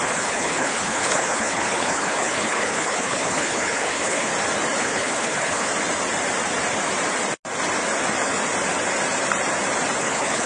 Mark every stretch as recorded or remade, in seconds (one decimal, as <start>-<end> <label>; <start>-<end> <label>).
0.0-4.3 remade; 4.3-4.8 recorded; 4.8-5.7 remade; 5.7-10.0 recorded; 10.0-10.5 remade